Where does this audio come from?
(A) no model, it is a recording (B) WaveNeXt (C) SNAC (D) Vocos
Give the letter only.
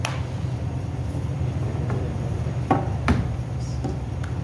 A